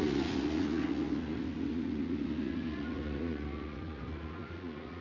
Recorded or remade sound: remade